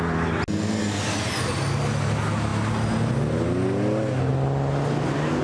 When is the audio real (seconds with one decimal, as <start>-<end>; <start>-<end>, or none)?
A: 0.0-5.4